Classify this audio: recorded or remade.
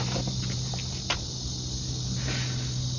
recorded